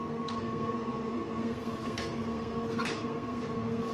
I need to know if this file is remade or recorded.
remade